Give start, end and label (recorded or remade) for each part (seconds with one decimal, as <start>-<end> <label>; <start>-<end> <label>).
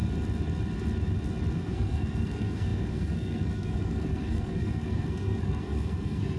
0.0-1.5 recorded; 1.5-6.4 remade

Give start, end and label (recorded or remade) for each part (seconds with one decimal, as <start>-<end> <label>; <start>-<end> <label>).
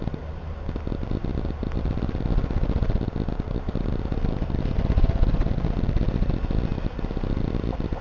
0.0-8.0 recorded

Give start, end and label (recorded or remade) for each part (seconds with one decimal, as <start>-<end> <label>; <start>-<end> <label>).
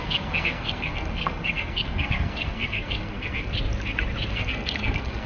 0.0-3.5 remade; 3.5-4.3 recorded; 4.3-5.3 remade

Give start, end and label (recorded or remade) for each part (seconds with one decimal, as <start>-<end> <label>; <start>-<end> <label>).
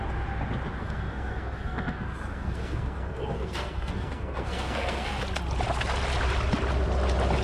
0.0-0.8 recorded; 0.8-5.2 remade; 5.2-7.4 recorded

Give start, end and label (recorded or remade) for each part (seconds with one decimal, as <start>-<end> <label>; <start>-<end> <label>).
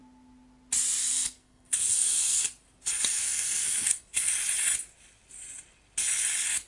0.0-1.0 recorded; 1.0-2.4 remade; 2.4-3.2 recorded; 3.2-4.3 remade; 4.3-6.7 recorded